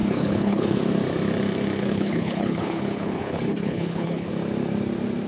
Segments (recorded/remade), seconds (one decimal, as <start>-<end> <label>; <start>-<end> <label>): 0.0-0.8 remade; 0.8-1.8 recorded; 1.8-4.3 remade; 4.3-5.3 recorded